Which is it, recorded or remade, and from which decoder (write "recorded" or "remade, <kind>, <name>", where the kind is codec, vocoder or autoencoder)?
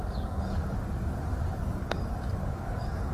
remade, codec, DAC